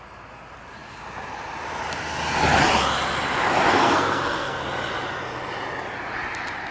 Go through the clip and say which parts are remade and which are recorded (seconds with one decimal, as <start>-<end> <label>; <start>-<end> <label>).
0.0-3.7 recorded; 3.7-4.6 remade; 4.6-6.7 recorded

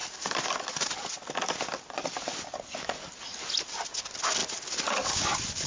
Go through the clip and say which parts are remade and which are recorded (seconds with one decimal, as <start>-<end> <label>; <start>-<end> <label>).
0.0-5.7 recorded

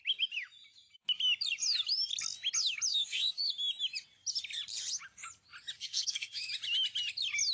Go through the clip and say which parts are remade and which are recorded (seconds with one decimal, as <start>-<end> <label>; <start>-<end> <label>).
0.0-2.9 recorded; 2.9-3.4 remade; 3.4-5.8 recorded; 5.8-6.5 remade; 6.5-7.5 recorded

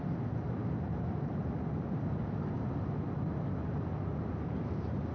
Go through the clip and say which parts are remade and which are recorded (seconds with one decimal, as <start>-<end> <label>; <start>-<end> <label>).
0.0-5.1 recorded

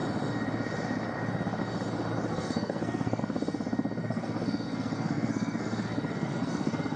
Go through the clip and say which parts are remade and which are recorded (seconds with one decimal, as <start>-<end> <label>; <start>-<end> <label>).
0.0-2.3 recorded; 2.3-3.2 remade; 3.2-4.0 recorded; 4.0-7.0 remade